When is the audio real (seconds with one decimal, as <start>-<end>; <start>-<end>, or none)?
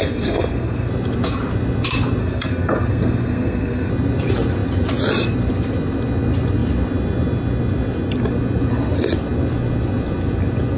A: 0.9-2.2; 3.9-10.8